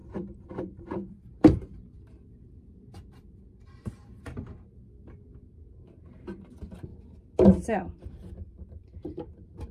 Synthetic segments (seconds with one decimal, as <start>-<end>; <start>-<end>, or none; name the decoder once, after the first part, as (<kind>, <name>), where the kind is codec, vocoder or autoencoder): 0.0-2.8 (vocoder, BigVGAN v2); 4.0-4.8; 6.9-7.5; 8.8-9.7